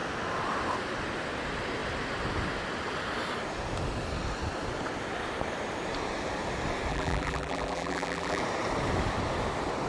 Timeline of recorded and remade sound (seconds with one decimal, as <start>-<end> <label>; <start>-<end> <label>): 0.0-6.9 recorded; 6.9-8.4 remade; 8.4-9.9 recorded